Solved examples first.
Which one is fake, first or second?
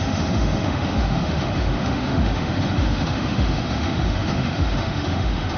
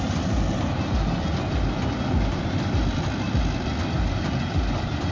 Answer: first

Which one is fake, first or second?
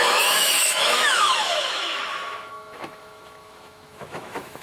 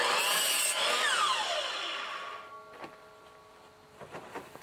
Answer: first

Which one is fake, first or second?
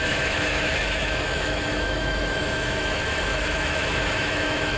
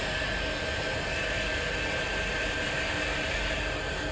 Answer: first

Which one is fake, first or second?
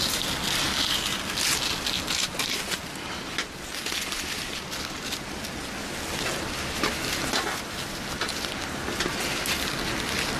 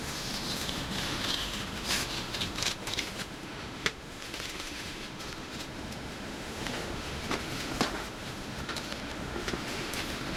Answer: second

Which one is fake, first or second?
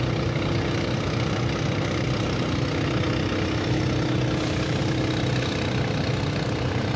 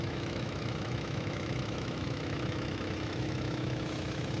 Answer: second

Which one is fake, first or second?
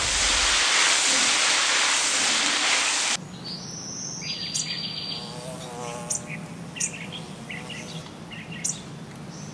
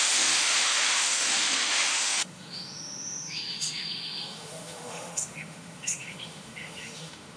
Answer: second